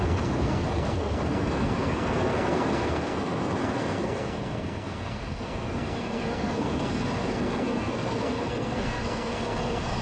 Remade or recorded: remade